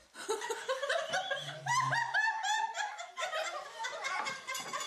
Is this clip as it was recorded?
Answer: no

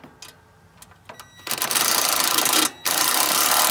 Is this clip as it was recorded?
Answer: yes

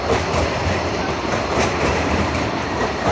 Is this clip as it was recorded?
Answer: no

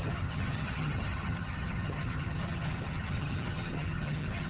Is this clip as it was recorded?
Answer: no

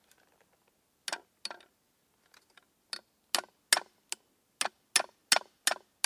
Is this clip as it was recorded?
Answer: yes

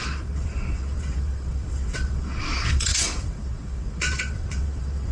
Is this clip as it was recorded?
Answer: no